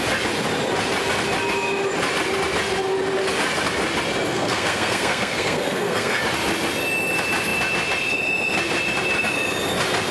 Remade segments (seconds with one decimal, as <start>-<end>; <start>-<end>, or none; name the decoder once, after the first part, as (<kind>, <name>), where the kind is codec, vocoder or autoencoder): 4.3-6.2 (codec, SNAC)